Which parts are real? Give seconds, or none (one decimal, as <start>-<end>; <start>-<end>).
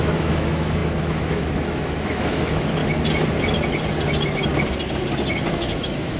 2.8-5.5